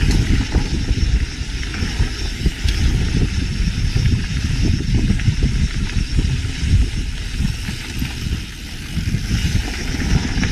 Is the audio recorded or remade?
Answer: recorded